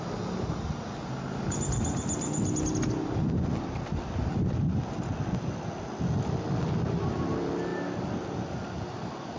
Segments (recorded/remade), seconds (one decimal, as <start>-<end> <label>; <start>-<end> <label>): 0.0-9.4 recorded